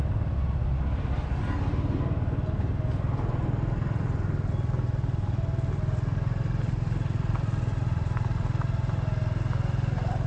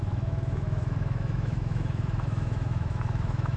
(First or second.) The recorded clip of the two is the first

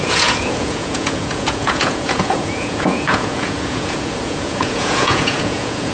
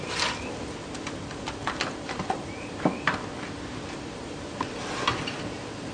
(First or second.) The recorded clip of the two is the second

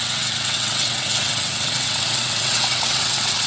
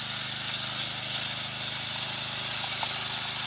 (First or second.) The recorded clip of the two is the second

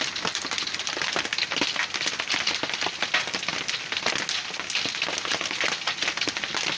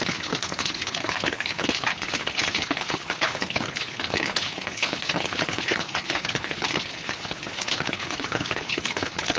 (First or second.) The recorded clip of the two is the first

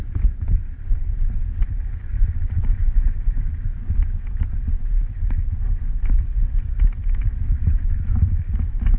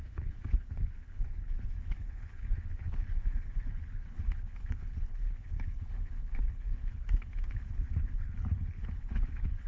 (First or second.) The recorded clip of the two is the first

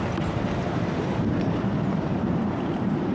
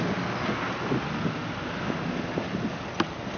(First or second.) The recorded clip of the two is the second